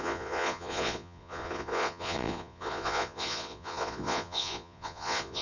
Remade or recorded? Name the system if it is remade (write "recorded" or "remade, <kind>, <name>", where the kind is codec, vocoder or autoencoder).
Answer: remade, vocoder, Vocos